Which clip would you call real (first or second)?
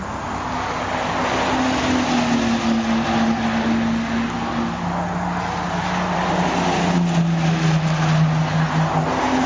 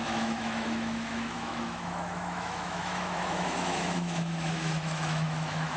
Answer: first